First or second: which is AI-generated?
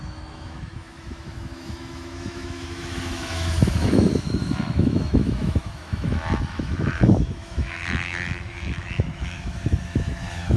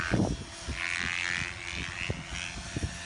first